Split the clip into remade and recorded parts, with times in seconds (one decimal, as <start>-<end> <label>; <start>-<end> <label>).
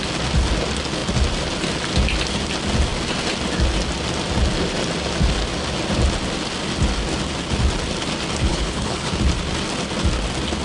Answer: 0.0-8.5 recorded; 8.5-9.1 remade; 9.1-10.6 recorded